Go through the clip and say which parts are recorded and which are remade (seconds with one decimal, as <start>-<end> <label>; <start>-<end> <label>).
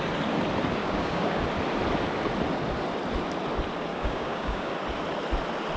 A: 0.0-0.8 recorded; 0.8-1.4 remade; 1.4-3.9 recorded; 3.9-4.7 remade; 4.7-5.8 recorded